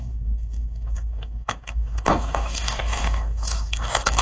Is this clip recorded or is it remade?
remade